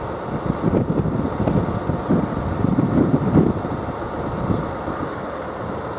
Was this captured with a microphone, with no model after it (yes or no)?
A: yes